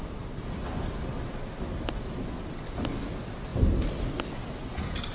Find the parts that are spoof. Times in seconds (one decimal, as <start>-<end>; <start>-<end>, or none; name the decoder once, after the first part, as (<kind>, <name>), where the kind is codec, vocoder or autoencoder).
none